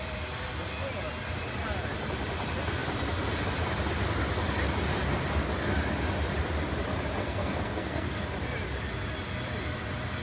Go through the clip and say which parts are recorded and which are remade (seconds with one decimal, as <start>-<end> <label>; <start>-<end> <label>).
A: 0.0-7.2 recorded; 7.2-8.2 remade; 8.2-10.2 recorded